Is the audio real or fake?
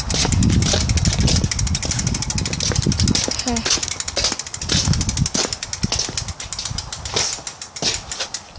real